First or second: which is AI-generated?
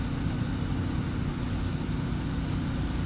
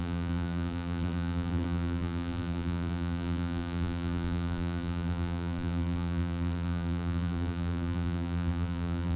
second